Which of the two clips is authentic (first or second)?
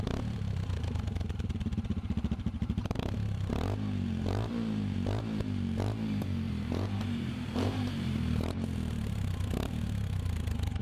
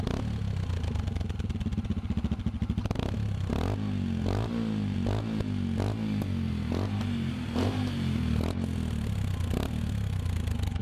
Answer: second